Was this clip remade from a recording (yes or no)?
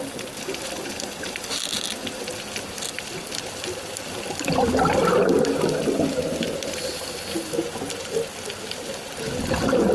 no